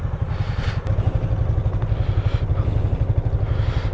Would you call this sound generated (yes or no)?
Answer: no